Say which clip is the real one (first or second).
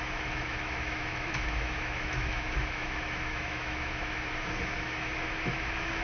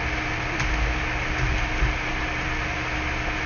second